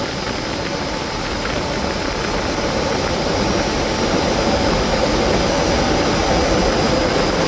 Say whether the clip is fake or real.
real